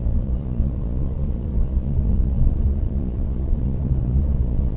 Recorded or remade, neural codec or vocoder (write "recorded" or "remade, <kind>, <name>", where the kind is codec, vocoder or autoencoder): remade, vocoder, Vocos